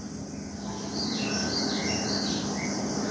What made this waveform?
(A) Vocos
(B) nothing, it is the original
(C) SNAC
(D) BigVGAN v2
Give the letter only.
B